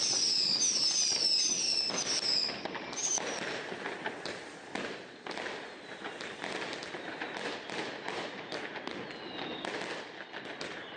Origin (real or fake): real